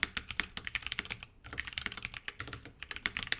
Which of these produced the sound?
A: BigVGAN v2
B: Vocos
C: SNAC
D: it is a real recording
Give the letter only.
D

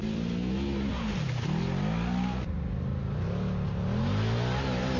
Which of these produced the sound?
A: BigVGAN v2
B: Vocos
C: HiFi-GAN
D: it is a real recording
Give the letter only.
D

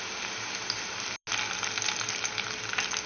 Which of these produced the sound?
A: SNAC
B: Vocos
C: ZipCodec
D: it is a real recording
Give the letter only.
D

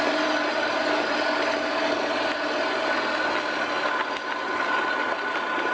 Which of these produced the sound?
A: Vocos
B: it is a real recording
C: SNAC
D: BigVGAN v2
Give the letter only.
B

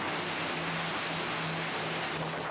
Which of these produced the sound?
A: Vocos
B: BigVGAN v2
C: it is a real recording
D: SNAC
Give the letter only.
C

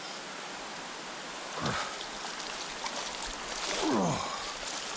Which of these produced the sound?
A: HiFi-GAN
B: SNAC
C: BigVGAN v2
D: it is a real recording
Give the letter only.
D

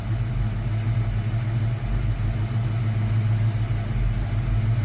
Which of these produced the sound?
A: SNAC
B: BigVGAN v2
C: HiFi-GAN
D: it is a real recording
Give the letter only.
D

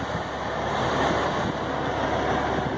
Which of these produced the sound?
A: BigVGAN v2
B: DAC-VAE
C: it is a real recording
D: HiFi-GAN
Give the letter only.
C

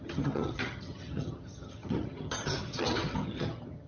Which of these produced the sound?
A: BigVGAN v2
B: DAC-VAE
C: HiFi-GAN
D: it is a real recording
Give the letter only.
C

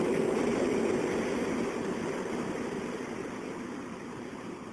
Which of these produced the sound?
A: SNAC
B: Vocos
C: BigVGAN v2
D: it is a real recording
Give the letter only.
C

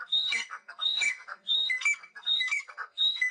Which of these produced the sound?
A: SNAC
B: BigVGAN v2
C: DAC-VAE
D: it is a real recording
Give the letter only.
A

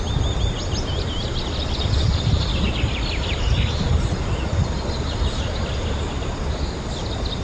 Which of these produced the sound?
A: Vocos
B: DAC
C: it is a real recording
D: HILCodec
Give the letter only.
C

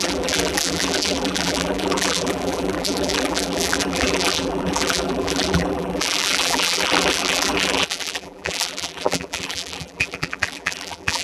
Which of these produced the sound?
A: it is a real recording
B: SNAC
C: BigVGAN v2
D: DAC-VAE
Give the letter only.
C